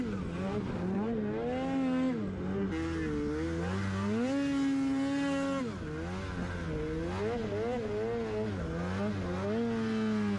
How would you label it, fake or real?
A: real